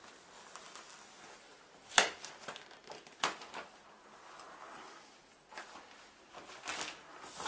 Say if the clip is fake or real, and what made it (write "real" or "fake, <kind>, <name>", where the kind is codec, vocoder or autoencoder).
real